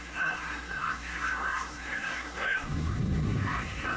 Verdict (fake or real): fake